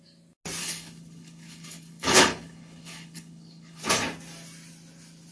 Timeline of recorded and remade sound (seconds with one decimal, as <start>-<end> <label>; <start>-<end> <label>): 0.0-0.6 recorded; 0.6-3.8 remade; 3.8-5.3 recorded